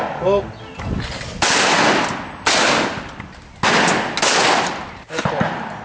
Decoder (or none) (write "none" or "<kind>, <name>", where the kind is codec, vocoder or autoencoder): none